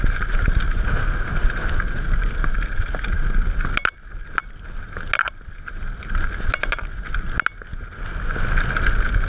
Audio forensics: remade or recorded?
recorded